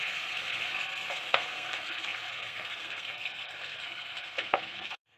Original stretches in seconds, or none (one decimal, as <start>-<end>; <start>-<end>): none